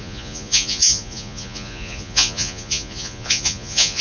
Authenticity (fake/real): fake